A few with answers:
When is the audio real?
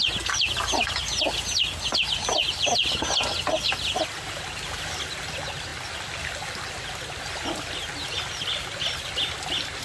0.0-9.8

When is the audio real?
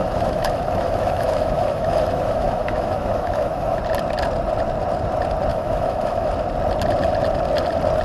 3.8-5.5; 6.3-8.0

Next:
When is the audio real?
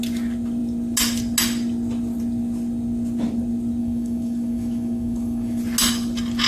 0.0-3.8; 5.6-6.5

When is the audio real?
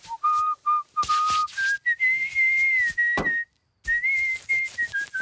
0.0-5.2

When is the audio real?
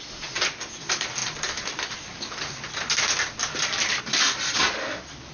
0.0-5.3